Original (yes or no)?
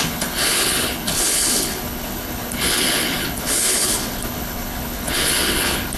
no